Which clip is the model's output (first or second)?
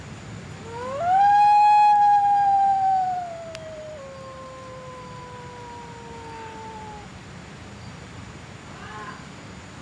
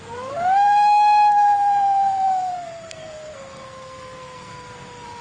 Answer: second